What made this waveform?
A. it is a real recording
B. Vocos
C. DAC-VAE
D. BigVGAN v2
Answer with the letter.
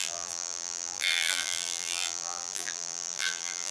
D